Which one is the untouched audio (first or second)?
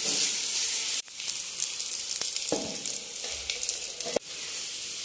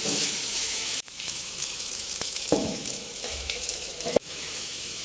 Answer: first